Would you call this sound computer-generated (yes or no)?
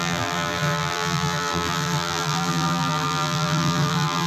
yes